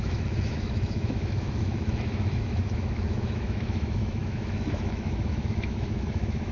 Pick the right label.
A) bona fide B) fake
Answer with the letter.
B